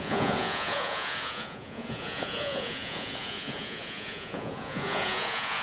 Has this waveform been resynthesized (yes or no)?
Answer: yes